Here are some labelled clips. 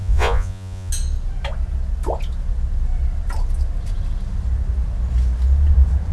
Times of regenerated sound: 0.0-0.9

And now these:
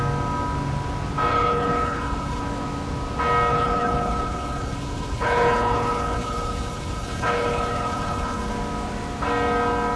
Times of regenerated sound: 1.3-2.4; 3.5-8.5

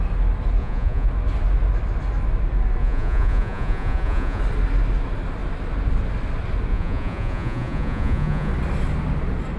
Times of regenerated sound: 0.6-1.1; 2.8-4.4; 6.7-8.5

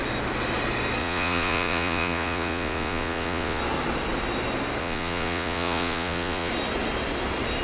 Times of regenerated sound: 1.0-3.6; 4.8-6.5

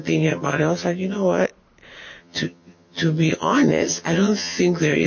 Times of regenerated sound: 0.0-1.4; 2.2-5.1